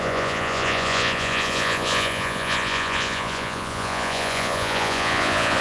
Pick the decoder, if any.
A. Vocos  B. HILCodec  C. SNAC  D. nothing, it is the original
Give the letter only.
A